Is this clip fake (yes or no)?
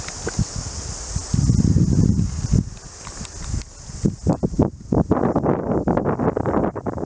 no